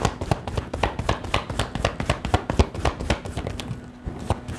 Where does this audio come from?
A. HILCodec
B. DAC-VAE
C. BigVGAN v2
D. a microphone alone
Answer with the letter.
D